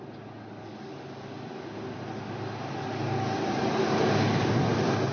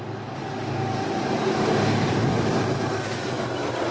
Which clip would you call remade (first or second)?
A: second